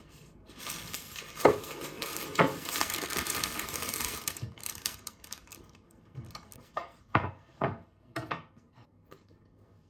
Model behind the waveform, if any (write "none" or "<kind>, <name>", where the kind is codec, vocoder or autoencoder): codec, SNAC